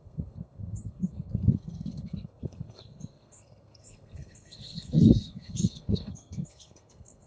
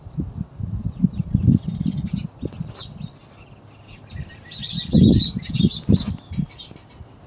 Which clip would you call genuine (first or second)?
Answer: second